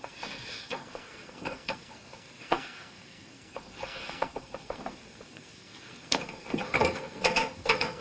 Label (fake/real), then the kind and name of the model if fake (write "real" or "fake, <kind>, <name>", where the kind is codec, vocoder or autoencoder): fake, codec, SNAC